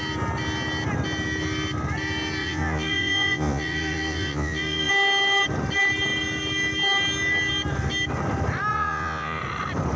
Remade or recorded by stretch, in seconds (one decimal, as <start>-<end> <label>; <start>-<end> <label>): 0.0-2.4 recorded; 2.4-4.9 remade; 4.9-8.7 recorded; 8.7-9.4 remade; 9.4-10.0 recorded